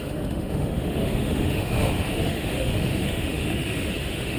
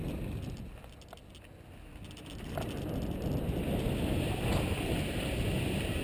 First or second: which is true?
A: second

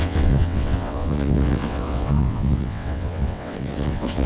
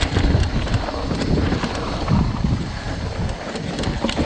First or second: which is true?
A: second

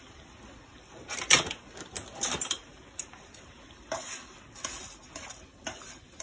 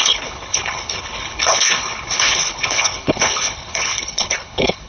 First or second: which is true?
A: first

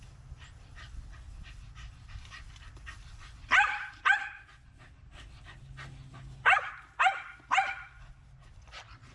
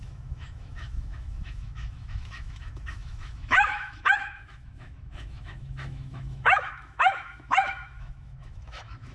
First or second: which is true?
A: first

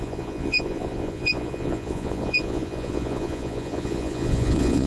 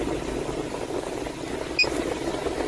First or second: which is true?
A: second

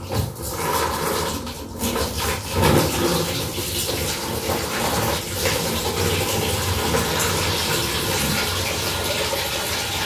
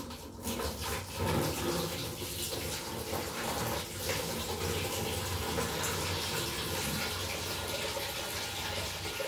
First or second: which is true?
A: second